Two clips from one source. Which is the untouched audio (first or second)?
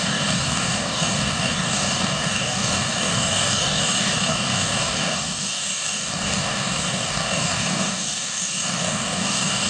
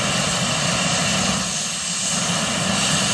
second